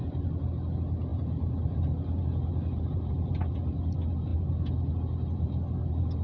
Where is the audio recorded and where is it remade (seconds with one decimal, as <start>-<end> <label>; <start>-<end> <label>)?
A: 0.0-6.2 recorded